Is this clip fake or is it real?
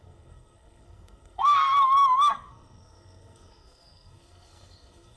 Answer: fake